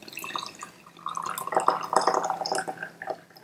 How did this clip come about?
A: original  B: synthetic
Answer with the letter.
A